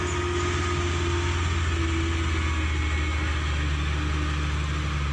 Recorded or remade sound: recorded